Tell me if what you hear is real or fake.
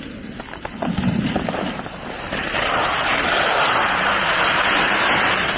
real